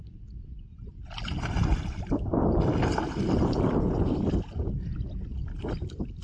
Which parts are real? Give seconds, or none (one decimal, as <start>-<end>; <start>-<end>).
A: 0.0-6.2